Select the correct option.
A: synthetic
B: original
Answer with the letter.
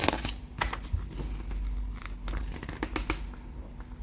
B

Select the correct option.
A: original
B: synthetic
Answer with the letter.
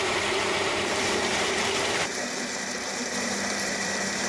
B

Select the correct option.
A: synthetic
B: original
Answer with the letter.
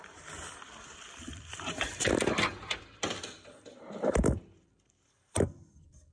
A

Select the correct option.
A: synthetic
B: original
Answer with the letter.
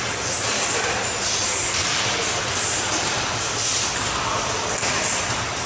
A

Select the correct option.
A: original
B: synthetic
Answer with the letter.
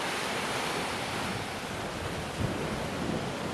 B